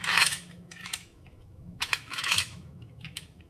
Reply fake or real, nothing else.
fake